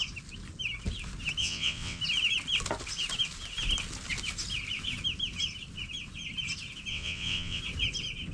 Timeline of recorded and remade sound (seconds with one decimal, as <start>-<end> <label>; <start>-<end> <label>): 0.0-1.4 recorded; 1.4-2.0 remade; 2.0-6.9 recorded; 6.9-7.6 remade; 7.6-8.3 recorded